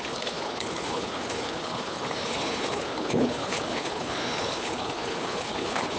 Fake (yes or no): yes